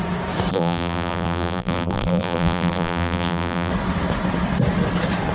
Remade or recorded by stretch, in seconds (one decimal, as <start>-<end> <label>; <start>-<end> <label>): 0.0-0.5 recorded; 0.5-3.7 remade; 3.7-5.3 recorded